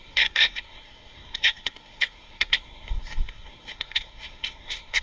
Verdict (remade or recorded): remade